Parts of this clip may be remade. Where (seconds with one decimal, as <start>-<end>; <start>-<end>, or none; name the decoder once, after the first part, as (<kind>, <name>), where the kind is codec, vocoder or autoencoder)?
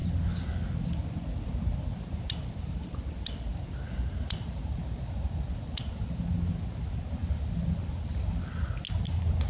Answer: 3.5-6.0 (vocoder, BigVGAN v2); 7.2-8.5